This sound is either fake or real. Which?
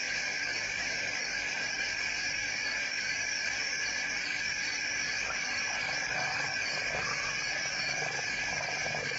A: fake